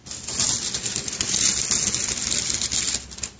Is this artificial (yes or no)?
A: no